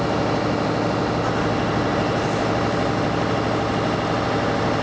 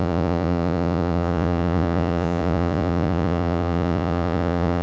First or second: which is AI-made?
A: second